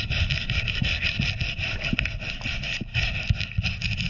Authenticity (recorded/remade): recorded